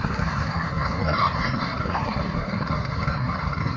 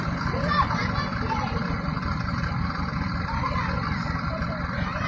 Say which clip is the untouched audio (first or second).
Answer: second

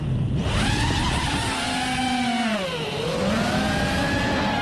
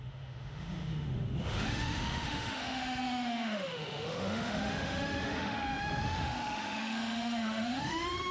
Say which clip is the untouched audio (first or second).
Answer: first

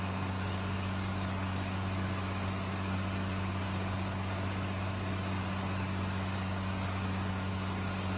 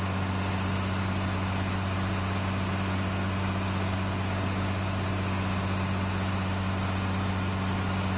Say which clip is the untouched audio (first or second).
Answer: second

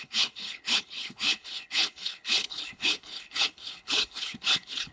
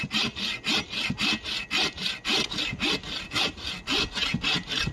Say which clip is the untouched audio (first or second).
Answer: second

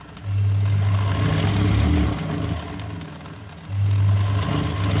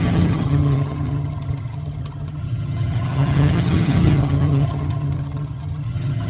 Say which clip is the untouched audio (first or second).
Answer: first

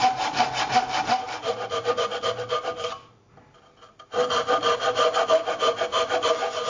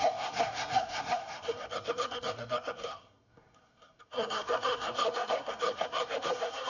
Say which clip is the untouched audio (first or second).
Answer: first